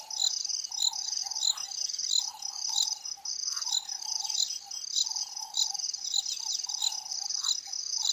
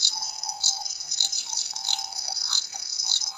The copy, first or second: second